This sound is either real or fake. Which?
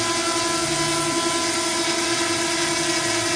real